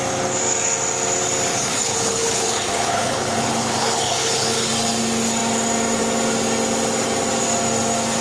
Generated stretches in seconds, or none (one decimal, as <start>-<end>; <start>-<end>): 1.5-4.7